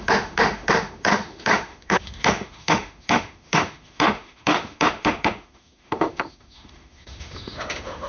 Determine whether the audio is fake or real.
fake